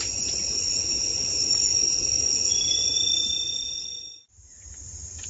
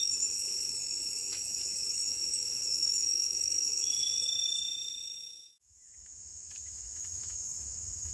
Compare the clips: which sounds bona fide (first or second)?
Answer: first